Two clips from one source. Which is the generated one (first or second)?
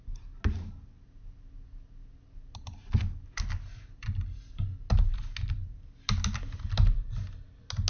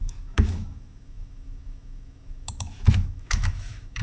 second